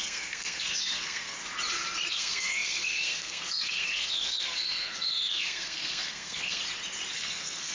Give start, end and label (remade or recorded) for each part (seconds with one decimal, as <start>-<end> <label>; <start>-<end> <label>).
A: 0.0-1.4 remade; 1.4-2.1 recorded; 2.1-6.6 remade; 6.6-7.1 recorded; 7.1-7.7 remade